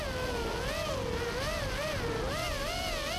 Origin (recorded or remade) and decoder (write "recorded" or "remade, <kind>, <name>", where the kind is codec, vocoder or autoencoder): recorded